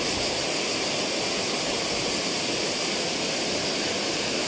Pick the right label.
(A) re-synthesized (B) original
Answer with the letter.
B